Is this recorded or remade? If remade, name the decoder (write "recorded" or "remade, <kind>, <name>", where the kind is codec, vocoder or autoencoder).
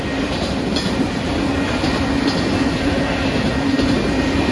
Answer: recorded